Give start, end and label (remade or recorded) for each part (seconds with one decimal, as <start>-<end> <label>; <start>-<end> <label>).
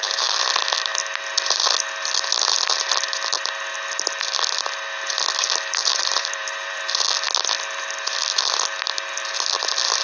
0.0-5.9 recorded; 5.9-6.8 remade; 6.8-10.0 recorded